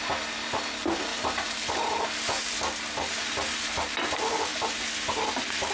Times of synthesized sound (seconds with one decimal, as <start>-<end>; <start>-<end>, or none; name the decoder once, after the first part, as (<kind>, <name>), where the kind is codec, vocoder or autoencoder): 1.1-2.1 (vocoder, BigVGAN v2); 4.5-5.1